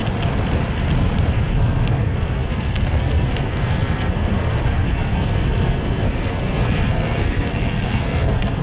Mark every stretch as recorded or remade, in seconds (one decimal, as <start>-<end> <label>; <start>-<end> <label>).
0.0-1.3 recorded; 1.3-8.6 remade